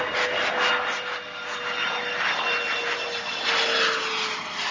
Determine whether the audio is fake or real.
real